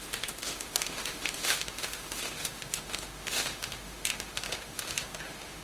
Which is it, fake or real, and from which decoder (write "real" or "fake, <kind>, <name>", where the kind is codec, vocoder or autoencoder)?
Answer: fake, autoencoder, DAC-VAE